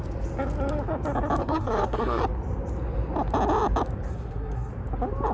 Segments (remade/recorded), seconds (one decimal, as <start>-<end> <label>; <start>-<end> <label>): 0.0-1.4 recorded; 1.4-2.2 remade; 2.2-4.1 recorded; 4.1-4.7 remade; 4.7-5.3 recorded